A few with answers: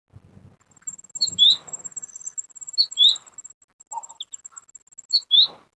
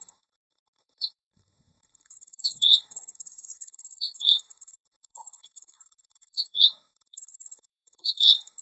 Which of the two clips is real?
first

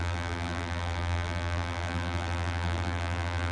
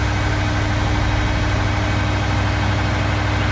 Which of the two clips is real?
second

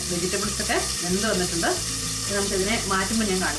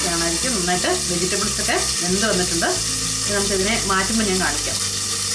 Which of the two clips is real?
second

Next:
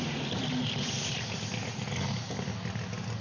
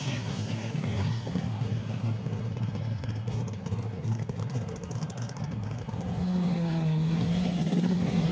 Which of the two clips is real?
first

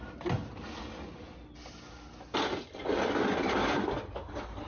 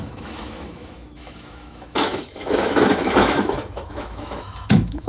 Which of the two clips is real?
first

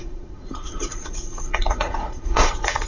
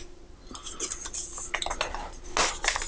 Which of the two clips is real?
second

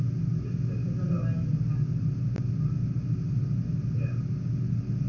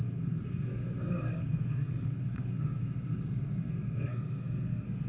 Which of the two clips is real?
first